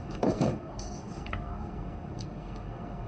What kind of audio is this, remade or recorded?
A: remade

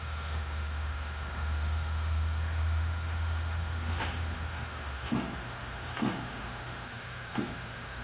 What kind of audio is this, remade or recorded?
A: remade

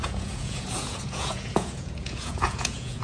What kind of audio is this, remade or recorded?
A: remade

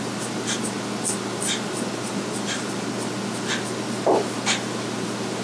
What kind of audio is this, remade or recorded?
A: recorded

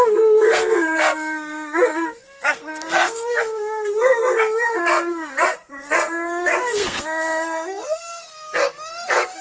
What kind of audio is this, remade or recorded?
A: remade